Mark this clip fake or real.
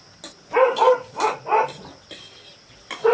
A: real